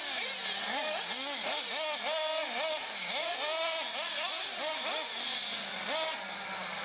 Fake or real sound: real